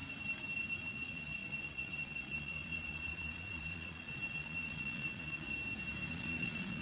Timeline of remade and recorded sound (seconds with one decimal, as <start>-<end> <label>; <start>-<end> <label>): 0.0-0.8 recorded; 0.8-5.5 remade; 5.5-6.1 recorded; 6.1-6.8 remade